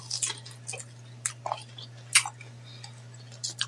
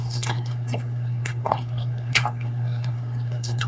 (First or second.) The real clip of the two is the first